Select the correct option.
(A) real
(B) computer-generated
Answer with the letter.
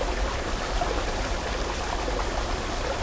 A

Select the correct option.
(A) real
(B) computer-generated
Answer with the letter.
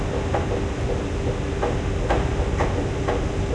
A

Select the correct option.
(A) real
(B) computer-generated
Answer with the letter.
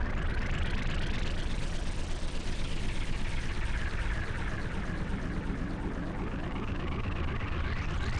A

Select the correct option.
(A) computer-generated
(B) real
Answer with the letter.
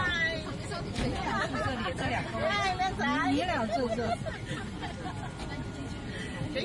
B